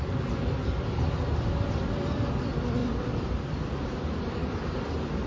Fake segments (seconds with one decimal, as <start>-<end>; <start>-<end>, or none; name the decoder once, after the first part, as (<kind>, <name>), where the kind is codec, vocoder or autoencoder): 2.8-4.3 (vocoder, BigVGAN v2)